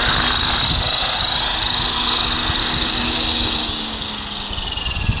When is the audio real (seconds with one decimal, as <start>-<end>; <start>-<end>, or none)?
0.0-2.6; 4.5-5.2